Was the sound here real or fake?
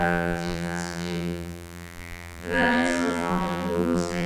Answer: fake